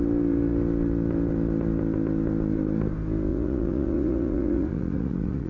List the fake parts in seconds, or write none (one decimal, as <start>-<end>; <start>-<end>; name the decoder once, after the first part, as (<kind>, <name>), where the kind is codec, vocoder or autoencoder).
3.3-5.5 (vocoder, Vocos)